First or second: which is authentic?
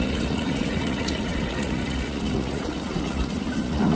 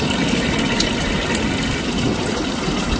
second